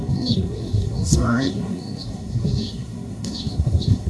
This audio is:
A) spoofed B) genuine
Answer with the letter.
A